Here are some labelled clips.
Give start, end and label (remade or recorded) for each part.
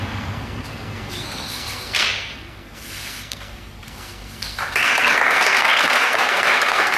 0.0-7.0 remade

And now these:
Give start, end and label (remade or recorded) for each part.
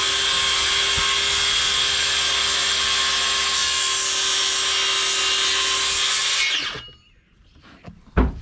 0.0-8.4 recorded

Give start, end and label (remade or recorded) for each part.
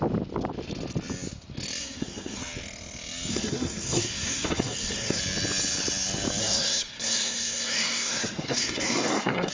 0.0-1.8 recorded; 1.8-2.4 remade; 2.4-3.3 recorded; 3.3-5.2 remade; 5.2-6.4 recorded; 6.4-9.5 remade